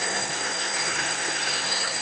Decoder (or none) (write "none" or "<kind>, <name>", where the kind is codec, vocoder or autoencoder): codec, SNAC